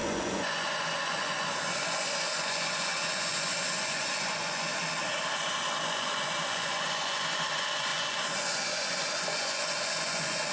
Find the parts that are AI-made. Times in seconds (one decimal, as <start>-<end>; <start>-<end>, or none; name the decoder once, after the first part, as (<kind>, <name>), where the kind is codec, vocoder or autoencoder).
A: 0.0-4.7 (vocoder, Vocos); 5.8-10.5